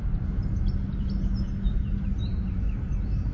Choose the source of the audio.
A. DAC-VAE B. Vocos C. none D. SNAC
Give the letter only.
C